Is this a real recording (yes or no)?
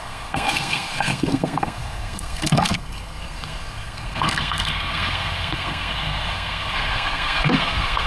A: no